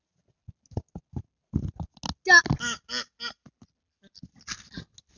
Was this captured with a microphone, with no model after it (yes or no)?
yes